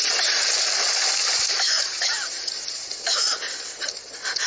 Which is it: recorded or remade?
recorded